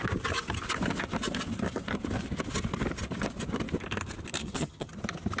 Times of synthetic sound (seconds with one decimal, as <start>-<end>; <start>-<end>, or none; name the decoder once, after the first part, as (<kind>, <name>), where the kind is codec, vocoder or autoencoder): 4.4-4.9 (vocoder, HiFi-GAN)